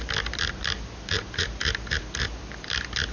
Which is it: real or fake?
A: real